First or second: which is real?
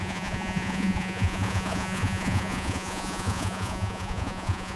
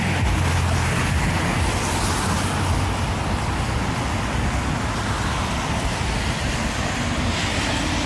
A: second